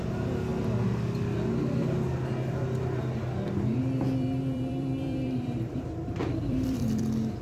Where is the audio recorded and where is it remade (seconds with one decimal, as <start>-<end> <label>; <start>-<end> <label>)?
0.0-3.7 recorded; 3.7-7.0 remade; 7.0-7.4 recorded